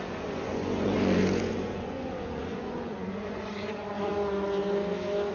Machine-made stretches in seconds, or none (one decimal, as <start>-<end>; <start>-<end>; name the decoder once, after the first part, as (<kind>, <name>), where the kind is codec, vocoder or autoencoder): 0.0-4.1 (vocoder, Vocos)